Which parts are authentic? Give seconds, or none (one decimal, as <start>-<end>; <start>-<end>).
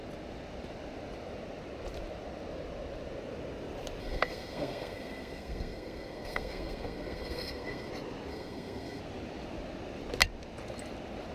0.0-4.0; 7.9-8.3; 9.0-11.3